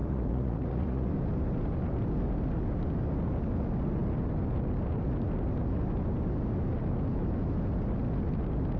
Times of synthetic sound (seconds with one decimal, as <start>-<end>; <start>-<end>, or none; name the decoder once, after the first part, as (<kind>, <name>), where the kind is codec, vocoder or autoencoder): 0.0-1.1 (vocoder, Vocos)